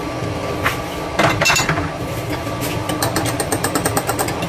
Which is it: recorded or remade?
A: recorded